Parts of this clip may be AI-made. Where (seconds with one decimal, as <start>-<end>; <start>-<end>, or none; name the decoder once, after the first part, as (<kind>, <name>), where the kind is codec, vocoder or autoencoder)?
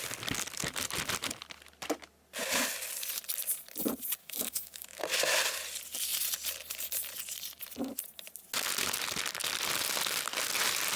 4.2-5.0 (autoencoder, DAC-VAE)